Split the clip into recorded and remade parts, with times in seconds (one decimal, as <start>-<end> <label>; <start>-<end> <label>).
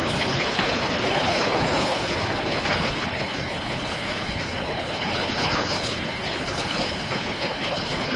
0.0-8.2 remade